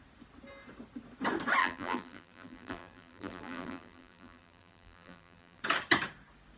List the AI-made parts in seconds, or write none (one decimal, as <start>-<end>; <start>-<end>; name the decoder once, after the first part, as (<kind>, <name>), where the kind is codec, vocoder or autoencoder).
1.6-5.6 (vocoder, BigVGAN v2)